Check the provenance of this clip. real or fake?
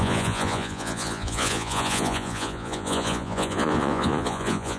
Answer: fake